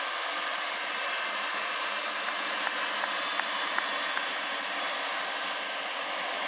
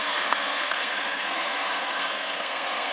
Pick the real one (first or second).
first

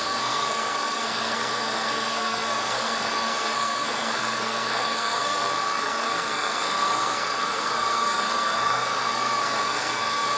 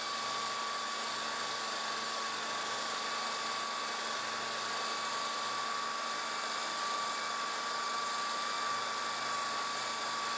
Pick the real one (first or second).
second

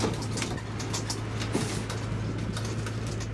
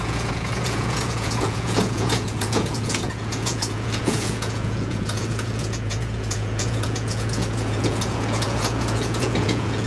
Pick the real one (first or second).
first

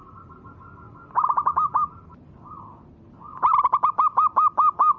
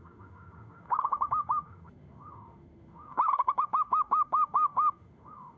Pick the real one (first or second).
first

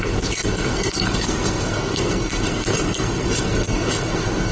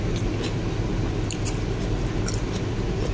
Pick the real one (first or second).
second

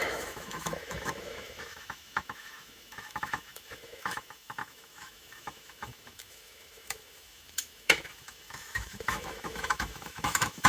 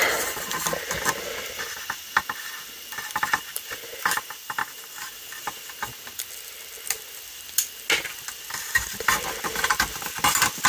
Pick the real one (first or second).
second